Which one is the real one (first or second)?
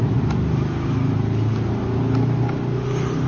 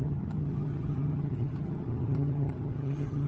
first